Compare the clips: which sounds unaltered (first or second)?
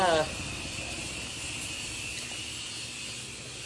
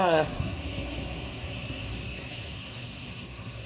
first